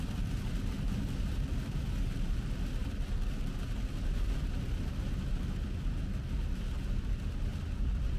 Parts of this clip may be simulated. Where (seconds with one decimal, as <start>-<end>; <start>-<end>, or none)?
7.5-8.2